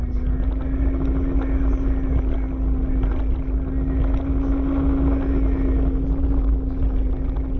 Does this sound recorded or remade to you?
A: recorded